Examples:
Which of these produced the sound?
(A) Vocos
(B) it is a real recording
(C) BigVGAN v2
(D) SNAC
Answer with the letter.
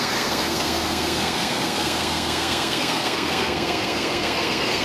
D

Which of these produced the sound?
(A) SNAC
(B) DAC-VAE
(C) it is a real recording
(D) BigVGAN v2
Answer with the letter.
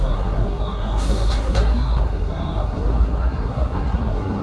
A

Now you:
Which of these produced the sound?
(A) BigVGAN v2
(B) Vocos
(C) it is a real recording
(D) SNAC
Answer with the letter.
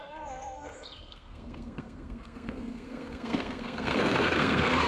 D